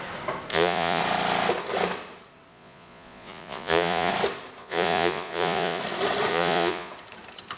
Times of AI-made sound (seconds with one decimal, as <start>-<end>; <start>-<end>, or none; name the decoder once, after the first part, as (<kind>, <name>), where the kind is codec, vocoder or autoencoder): 0.5-1.0 (vocoder, Vocos); 2.5-4.1; 4.6-5.8; 6.3-6.9